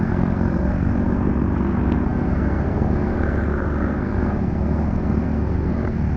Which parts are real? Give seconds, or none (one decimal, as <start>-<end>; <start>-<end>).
none